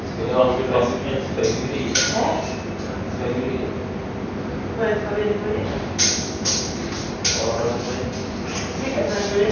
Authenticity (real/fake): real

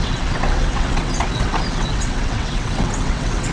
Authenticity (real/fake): fake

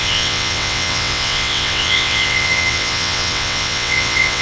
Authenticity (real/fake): fake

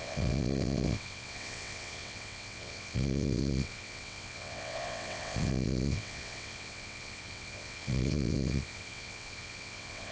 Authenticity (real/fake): fake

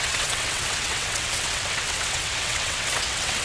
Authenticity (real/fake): fake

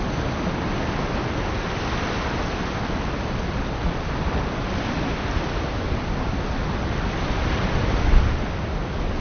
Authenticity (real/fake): real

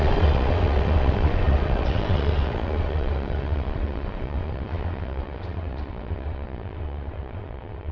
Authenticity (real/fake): fake